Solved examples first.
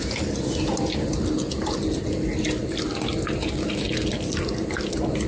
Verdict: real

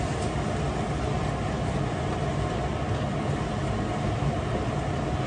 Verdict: real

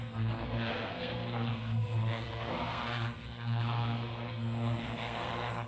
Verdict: fake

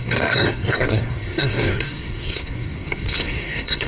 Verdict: fake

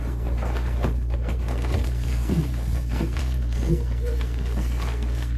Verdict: fake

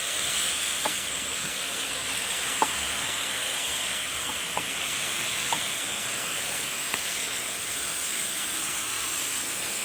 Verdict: fake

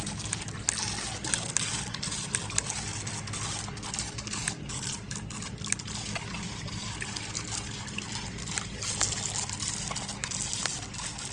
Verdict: real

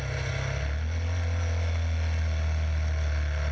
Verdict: real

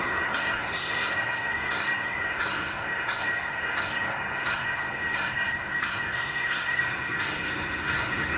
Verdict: fake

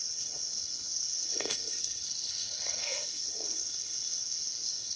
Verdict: fake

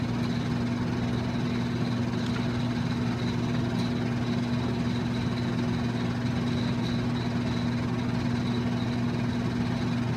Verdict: real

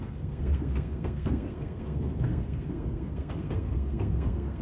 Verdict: fake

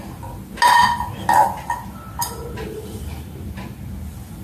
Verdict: real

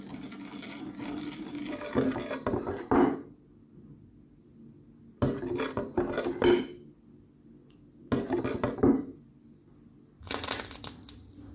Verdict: real